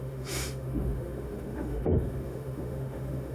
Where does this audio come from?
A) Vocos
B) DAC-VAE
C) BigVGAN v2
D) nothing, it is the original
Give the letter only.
B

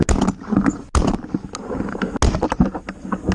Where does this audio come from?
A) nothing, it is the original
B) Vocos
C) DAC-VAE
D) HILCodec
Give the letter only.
A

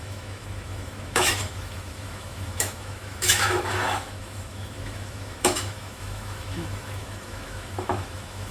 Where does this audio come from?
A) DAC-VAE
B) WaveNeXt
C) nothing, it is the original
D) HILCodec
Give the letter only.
A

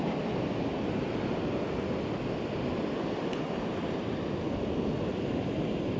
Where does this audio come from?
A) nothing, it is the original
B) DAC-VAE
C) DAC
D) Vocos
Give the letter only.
A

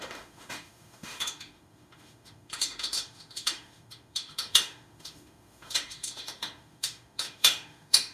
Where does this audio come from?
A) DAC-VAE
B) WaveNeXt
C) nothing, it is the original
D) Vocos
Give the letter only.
A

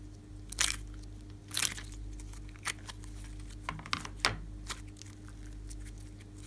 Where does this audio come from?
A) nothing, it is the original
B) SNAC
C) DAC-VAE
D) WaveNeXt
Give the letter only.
A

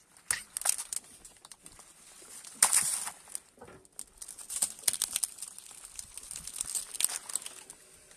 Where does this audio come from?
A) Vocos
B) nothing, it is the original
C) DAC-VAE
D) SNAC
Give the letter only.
B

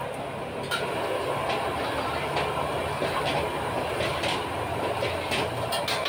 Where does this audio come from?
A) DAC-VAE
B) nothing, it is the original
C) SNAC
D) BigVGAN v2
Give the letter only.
B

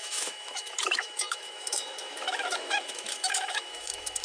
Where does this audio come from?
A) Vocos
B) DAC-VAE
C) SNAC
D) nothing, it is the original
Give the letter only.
B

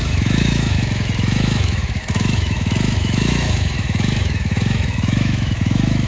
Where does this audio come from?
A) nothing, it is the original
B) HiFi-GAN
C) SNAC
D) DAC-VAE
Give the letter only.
D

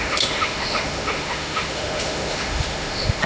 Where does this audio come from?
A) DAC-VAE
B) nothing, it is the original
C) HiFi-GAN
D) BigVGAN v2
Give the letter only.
A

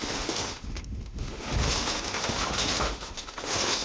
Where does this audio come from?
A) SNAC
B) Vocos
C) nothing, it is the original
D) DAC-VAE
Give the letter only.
D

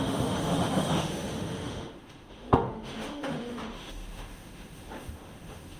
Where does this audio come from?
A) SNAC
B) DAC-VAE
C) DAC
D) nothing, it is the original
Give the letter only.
B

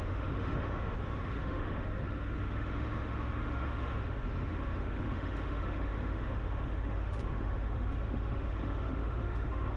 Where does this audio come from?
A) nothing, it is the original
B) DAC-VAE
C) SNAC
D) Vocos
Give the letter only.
B